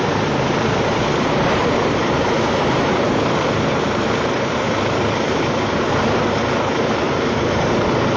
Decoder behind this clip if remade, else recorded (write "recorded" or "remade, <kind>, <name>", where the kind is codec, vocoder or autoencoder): remade, vocoder, BigVGAN v2